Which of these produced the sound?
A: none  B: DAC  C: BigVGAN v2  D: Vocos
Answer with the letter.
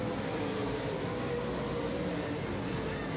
A